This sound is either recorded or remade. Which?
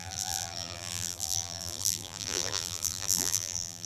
remade